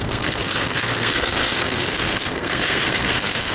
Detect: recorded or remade remade